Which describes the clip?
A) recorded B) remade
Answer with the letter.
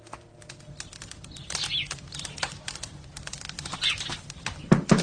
A